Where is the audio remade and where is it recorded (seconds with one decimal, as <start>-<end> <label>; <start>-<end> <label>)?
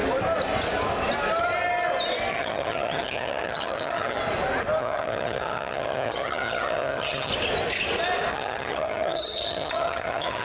0.0-2.3 recorded; 2.3-4.2 remade; 4.2-4.8 recorded; 4.8-7.3 remade; 7.3-8.3 recorded; 8.3-10.4 remade